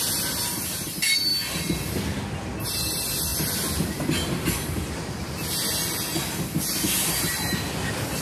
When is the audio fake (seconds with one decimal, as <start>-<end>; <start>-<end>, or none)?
none

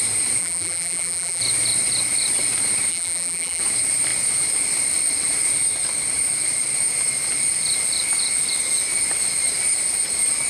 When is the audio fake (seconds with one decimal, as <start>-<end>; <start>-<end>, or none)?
0.4-1.4; 2.9-3.6

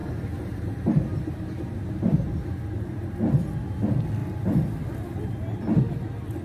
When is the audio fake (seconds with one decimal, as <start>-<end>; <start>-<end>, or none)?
0.0-1.9

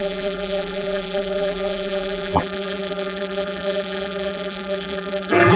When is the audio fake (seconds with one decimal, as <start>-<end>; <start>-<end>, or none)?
0.0-5.6